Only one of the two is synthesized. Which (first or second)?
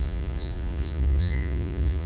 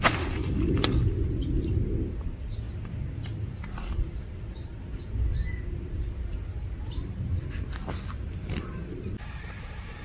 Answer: first